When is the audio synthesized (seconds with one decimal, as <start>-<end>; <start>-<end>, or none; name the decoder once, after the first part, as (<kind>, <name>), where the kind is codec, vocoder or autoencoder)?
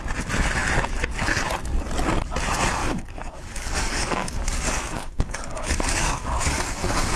2.8-7.2 (codec, DAC)